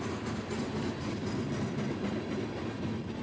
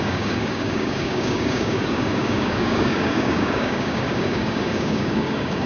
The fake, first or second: second